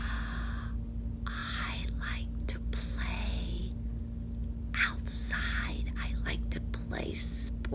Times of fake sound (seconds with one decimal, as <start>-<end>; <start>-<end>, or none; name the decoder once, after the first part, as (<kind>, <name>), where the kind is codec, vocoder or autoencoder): none